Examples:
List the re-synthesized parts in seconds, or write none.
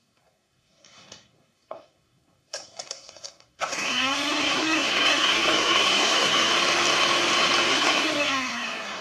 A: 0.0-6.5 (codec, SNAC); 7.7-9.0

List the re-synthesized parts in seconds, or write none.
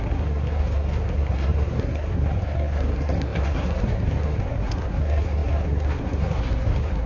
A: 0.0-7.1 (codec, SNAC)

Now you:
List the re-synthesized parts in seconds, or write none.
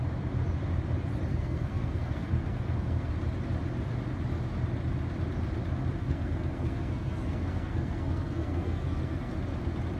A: 1.3-3.1 (codec, SNAC); 6.0-9.3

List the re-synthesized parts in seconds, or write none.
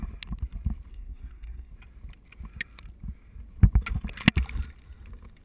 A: 0.9-1.7 (codec, SNAC)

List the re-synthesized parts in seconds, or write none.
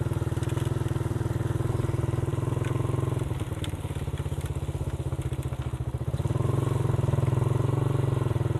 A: none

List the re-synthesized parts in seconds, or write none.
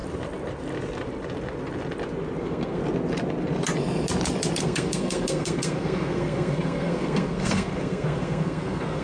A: 2.4-2.8 (codec, SNAC); 4.6-9.0